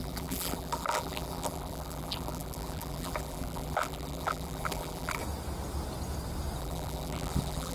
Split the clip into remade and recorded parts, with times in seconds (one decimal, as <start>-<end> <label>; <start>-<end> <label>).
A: 0.0-5.2 remade; 5.2-6.6 recorded; 6.6-7.7 remade